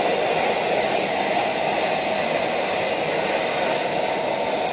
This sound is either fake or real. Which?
real